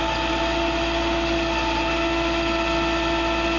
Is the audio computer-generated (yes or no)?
no